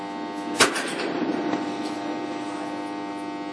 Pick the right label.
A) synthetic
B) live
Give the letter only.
B